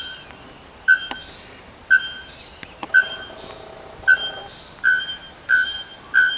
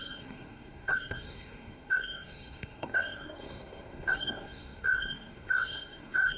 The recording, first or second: first